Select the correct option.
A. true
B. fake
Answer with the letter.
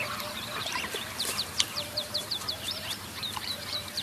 B